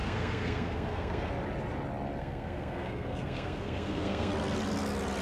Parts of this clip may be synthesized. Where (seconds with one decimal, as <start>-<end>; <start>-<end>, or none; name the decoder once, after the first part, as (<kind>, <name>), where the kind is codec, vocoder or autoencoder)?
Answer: 0.0-1.3 (codec, SNAC); 2.2-4.3